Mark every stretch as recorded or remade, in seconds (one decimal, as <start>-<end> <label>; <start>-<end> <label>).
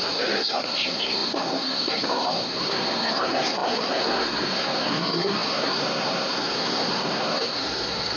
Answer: 0.0-8.2 remade